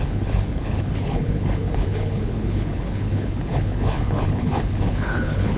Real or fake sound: fake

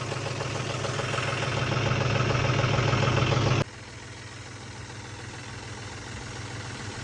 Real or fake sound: real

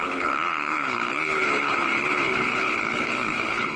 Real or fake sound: fake